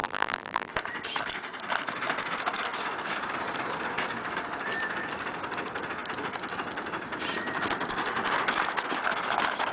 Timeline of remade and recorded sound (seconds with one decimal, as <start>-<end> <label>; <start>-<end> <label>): 0.0-0.7 remade; 0.7-9.7 recorded